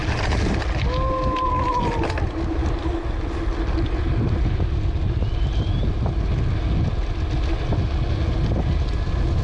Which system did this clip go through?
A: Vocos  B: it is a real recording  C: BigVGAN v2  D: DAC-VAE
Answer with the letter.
B